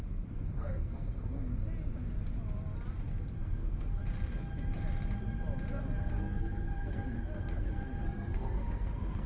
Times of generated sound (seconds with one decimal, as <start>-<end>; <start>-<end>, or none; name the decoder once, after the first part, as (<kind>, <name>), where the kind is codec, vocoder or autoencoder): 0.0-1.6 (codec, SNAC); 3.4-4.0; 6.1-9.3